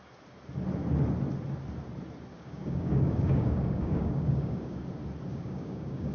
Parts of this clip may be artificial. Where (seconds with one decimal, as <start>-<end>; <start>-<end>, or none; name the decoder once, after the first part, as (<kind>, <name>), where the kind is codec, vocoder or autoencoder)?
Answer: 2.3-4.8 (codec, DAC); 5.3-6.1